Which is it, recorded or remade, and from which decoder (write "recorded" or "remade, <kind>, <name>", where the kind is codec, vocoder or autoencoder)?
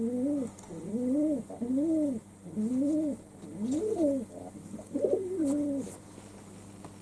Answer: recorded